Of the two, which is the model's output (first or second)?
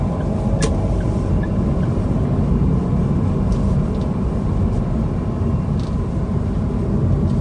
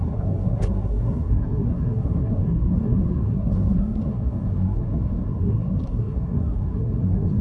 second